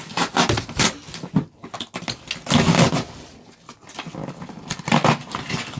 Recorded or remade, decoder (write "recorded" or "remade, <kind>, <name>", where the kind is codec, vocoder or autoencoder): recorded